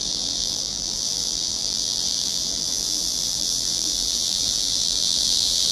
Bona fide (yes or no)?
no